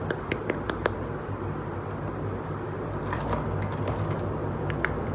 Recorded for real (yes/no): no